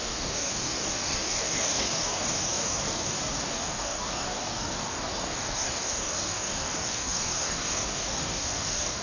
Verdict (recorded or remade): remade